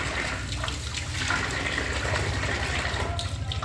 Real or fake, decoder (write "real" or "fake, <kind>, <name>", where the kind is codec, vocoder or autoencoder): real